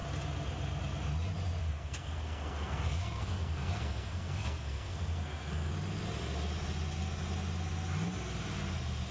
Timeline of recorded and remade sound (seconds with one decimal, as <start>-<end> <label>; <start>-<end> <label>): 0.0-1.6 recorded; 1.6-5.7 remade; 5.7-9.1 recorded